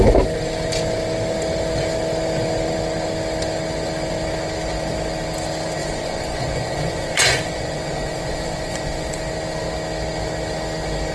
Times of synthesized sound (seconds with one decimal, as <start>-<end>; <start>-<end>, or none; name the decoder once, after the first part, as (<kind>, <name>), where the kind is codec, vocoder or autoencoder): 5.8-9.2 (vocoder, Vocos)